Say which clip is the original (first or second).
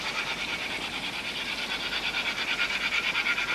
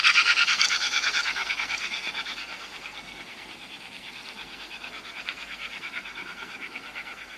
first